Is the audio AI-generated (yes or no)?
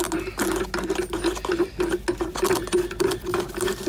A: no